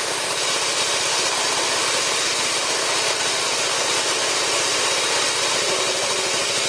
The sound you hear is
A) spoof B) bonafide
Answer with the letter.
B